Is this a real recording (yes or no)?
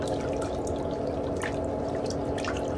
yes